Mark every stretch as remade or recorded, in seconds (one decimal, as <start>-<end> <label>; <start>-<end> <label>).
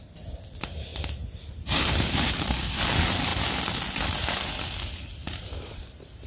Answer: 0.0-0.9 recorded; 0.9-2.8 remade; 2.8-5.2 recorded; 5.2-6.3 remade